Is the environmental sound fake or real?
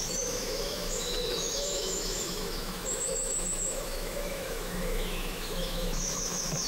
fake